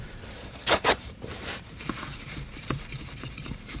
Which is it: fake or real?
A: fake